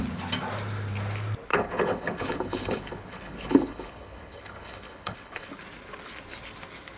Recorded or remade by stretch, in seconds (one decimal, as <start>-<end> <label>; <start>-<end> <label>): 0.0-1.5 recorded; 1.5-5.5 remade; 5.5-7.0 recorded